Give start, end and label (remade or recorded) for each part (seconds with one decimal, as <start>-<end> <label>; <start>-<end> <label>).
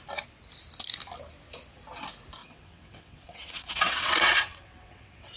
0.0-2.4 recorded; 2.4-5.4 remade